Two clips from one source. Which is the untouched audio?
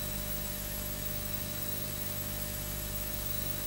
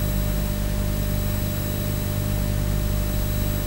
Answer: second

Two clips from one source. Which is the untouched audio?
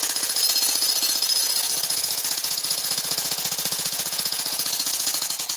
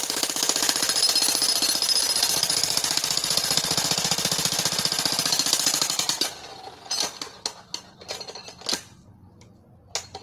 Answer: second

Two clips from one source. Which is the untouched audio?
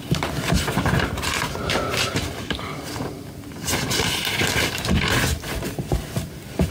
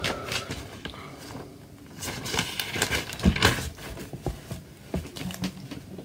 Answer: second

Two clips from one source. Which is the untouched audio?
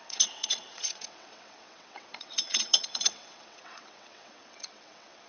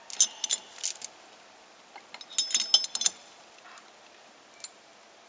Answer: second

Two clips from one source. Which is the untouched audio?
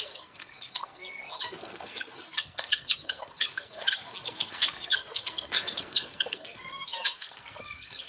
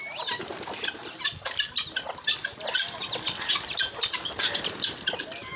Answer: second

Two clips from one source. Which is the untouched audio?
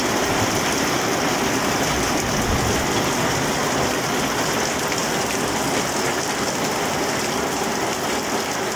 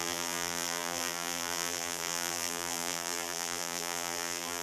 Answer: first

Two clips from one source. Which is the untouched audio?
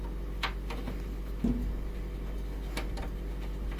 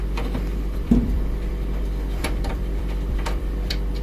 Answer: first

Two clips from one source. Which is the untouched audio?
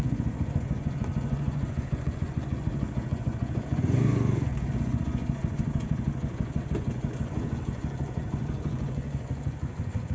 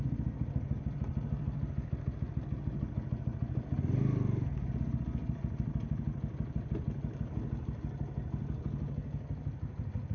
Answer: second